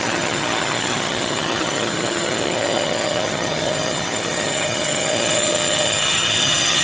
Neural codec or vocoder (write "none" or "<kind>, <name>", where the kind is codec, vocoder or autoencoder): vocoder, HiFi-GAN